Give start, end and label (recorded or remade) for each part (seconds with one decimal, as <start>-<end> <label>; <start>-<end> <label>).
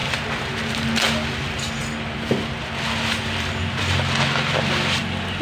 0.0-5.4 recorded